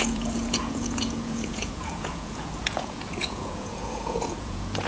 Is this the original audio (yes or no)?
no